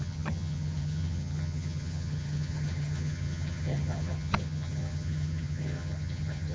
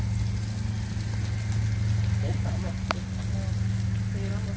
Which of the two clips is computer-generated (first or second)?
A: first